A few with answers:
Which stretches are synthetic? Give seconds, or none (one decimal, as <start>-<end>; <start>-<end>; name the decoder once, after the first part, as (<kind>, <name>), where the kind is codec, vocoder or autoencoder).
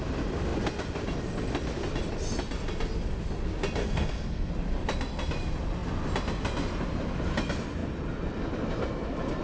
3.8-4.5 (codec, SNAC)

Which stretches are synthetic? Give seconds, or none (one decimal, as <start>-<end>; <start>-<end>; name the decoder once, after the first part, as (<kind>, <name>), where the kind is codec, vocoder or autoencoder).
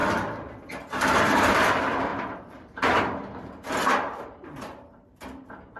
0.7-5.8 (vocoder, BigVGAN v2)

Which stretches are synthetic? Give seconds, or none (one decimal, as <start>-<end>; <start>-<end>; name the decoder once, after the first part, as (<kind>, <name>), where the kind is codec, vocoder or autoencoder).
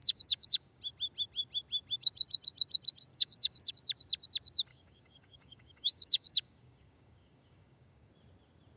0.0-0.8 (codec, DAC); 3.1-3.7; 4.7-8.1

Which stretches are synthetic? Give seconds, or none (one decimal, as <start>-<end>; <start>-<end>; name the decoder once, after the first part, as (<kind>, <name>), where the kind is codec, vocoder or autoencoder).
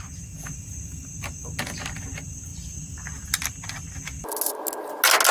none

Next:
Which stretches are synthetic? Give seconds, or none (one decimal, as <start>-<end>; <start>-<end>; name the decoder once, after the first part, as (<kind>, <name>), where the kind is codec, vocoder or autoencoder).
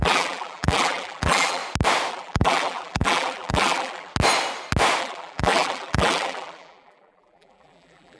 0.0-1.6 (vocoder, BigVGAN v2); 2.1-4.1; 5.0-8.2